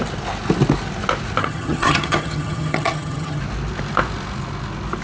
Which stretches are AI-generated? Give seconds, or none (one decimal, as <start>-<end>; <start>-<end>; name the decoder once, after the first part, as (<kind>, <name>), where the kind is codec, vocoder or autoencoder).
1.4-3.4 (vocoder, HiFi-GAN)